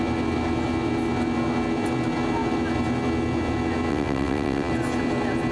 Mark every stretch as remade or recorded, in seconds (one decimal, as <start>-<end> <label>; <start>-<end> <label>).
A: 0.0-3.9 recorded; 3.9-4.7 remade; 4.7-5.5 recorded

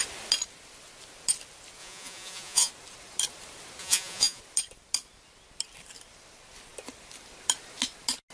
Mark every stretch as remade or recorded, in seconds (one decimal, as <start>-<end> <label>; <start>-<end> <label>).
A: 0.0-1.8 recorded; 1.8-2.7 remade; 2.7-3.8 recorded; 3.8-4.4 remade; 4.4-8.3 recorded